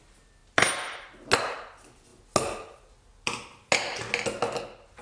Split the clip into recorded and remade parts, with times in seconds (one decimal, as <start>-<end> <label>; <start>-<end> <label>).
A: 0.0-5.0 recorded